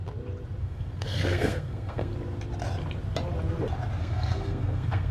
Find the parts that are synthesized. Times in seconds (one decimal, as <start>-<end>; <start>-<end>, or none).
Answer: 0.6-2.1; 4.0-5.1